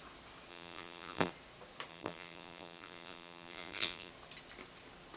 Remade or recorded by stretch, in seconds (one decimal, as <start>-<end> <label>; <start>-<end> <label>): 0.0-0.5 recorded; 0.5-1.3 remade; 1.3-1.9 recorded; 1.9-4.1 remade; 4.1-5.2 recorded